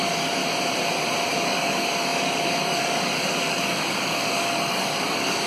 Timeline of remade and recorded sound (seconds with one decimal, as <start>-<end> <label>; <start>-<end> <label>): 0.0-0.4 remade; 0.4-1.3 recorded; 1.3-5.5 remade